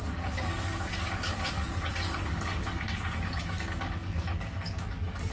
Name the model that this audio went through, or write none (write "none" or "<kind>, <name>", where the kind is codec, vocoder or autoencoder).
codec, DAC